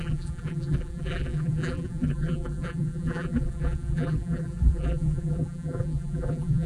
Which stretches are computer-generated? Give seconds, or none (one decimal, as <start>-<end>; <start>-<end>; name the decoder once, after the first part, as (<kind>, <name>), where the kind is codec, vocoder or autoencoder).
0.0-6.7 (vocoder, BigVGAN v2)